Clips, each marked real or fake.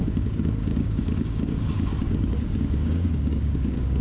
fake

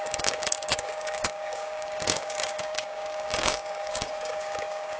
fake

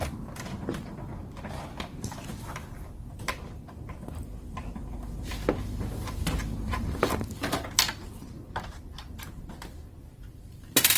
fake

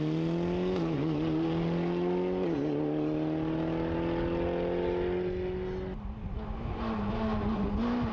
real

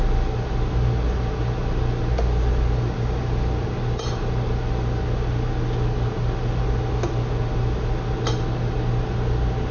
real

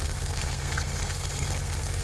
fake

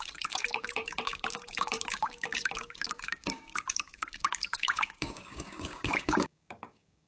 fake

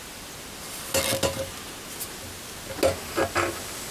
real